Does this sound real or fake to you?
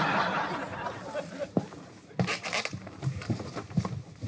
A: real